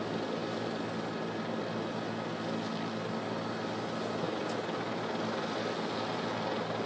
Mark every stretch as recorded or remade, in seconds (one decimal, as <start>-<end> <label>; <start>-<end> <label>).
0.0-6.9 recorded